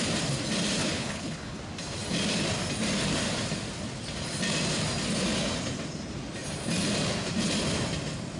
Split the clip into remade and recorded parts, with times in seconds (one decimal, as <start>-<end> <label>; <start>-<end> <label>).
0.0-0.8 recorded; 0.8-1.6 remade; 1.6-8.4 recorded